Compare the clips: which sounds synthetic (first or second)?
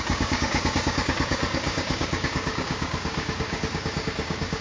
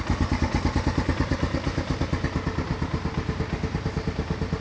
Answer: first